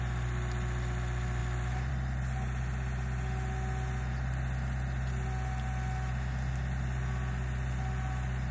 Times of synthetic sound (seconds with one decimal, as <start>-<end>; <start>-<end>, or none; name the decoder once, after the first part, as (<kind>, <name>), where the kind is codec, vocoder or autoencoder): none